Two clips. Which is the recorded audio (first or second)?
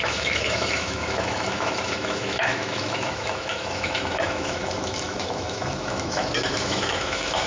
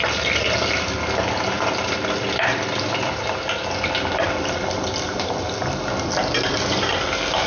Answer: second